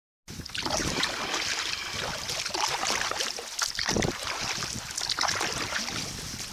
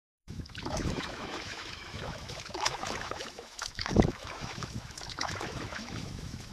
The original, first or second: first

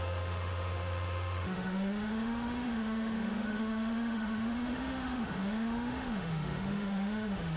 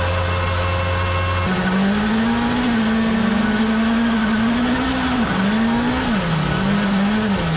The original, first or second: second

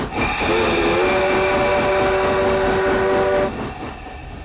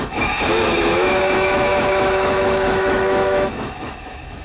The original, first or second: first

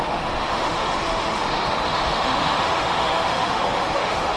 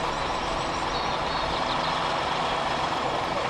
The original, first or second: second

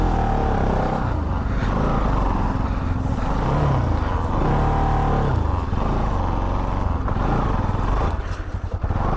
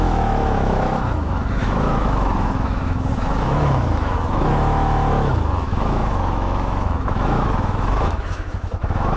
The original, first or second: first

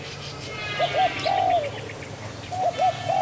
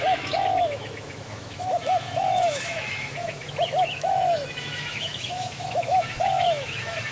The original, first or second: first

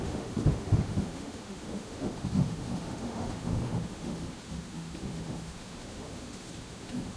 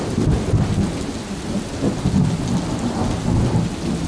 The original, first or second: second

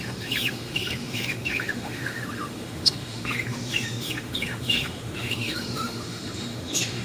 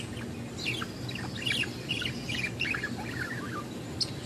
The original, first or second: second